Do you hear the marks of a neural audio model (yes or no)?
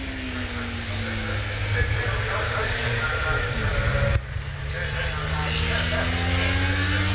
no